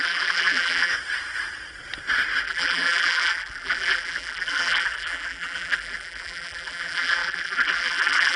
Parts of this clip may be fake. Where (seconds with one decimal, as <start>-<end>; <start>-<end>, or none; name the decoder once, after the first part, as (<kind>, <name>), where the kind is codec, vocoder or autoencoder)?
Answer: 0.0-0.9 (vocoder, BigVGAN v2); 2.4-8.4